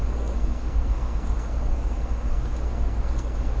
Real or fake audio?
fake